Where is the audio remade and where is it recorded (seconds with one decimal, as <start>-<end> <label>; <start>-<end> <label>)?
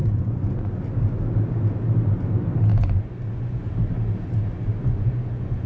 0.0-0.7 remade; 0.7-2.7 recorded; 2.7-3.7 remade; 3.7-4.8 recorded; 4.8-5.7 remade